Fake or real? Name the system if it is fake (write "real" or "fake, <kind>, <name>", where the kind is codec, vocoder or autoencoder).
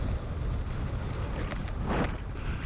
real